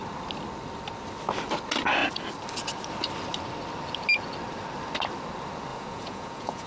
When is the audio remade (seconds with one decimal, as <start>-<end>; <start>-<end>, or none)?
5.7-6.7